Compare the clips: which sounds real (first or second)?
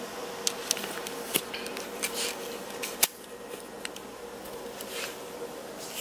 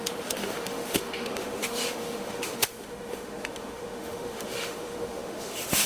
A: first